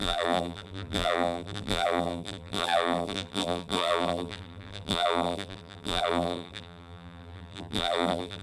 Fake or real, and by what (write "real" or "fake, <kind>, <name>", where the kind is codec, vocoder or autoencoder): fake, vocoder, BigVGAN v2